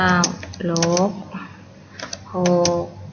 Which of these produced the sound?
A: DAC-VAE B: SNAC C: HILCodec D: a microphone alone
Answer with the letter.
D